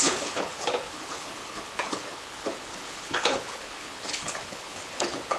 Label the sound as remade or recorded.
remade